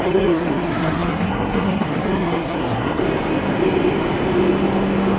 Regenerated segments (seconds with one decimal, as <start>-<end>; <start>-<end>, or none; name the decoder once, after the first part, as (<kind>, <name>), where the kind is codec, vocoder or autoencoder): 0.0-3.0 (codec, SNAC)